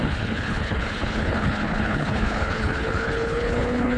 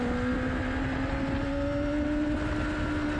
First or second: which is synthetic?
first